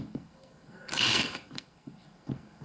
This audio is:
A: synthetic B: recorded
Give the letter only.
A